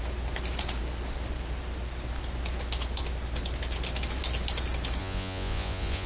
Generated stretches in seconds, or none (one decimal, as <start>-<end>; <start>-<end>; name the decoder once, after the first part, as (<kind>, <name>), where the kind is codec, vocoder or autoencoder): 5.0-6.1 (vocoder, Vocos)